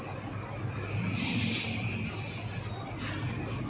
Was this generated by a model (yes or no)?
no